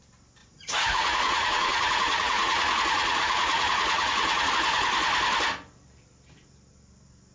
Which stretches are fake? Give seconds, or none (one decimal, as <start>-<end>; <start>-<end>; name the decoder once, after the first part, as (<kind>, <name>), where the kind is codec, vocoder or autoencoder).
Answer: 0.4-4.5 (vocoder, Vocos)